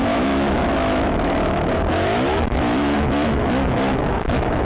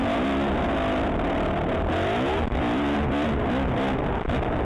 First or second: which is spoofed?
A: first